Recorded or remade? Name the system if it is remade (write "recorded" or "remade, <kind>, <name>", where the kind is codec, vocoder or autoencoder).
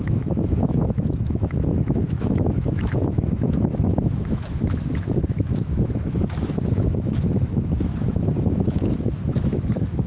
remade, autoencoder, DAC-VAE